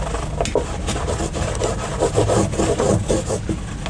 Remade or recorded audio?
recorded